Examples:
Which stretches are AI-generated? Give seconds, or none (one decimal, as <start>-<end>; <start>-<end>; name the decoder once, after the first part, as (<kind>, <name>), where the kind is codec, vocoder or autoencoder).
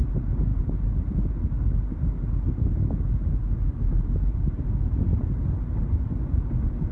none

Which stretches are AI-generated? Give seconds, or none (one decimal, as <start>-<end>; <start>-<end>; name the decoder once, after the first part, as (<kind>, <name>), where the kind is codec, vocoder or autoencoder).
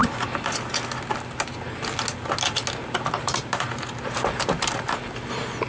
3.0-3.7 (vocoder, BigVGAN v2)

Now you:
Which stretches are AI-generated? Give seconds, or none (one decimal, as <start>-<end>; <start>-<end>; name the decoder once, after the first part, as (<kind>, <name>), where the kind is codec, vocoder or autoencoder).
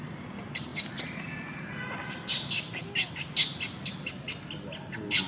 none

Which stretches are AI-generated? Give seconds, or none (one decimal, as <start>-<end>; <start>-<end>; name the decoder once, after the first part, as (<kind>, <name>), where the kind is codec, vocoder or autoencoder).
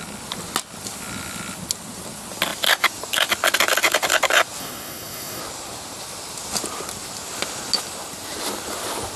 4.6-5.4 (codec, SNAC)